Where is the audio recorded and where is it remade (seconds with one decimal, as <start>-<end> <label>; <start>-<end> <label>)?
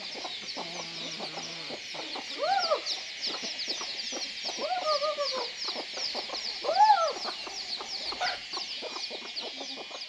0.0-6.0 recorded; 6.0-6.8 remade; 6.8-10.1 recorded